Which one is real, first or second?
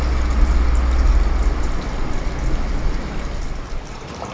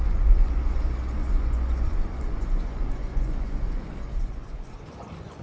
first